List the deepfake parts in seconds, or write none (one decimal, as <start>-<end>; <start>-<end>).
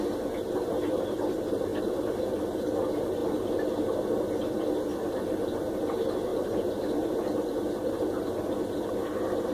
1.7-2.2; 4.9-5.7; 6.3-8.3